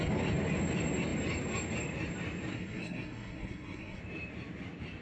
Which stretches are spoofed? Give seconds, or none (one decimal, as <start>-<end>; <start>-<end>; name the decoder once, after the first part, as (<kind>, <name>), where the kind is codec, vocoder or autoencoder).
2.5-4.0 (codec, SNAC)